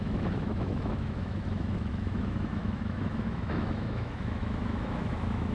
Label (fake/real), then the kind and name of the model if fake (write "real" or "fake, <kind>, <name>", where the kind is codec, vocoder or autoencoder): fake, autoencoder, DAC-VAE